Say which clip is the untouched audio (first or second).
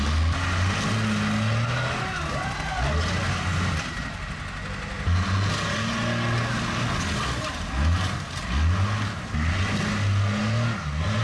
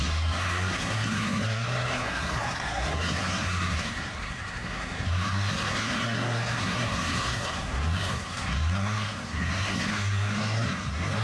first